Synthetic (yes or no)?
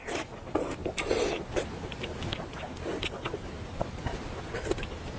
no